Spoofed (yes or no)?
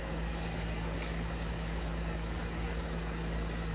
yes